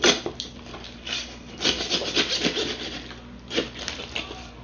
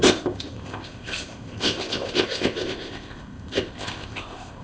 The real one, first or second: first